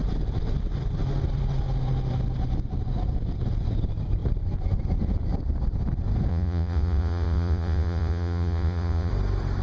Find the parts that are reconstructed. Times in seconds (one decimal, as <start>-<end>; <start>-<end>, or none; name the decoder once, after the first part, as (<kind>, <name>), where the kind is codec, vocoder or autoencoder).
6.3-9.1 (vocoder, Vocos)